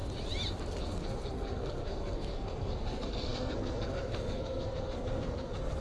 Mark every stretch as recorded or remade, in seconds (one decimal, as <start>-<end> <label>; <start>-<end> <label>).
0.0-0.8 recorded; 0.8-5.8 remade